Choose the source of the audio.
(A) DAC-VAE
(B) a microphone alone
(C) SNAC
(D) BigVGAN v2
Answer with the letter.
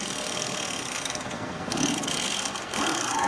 C